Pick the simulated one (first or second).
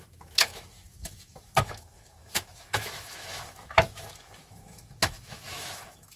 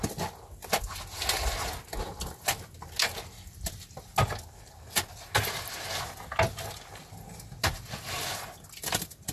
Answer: first